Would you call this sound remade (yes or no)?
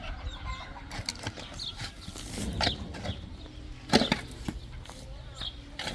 no